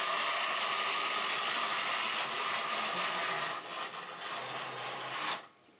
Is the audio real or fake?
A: real